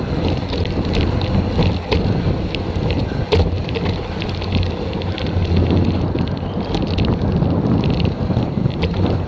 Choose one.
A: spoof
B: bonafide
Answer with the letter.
B